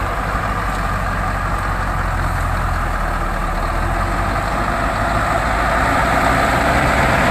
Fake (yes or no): no